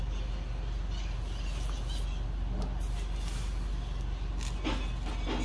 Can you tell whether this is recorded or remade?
recorded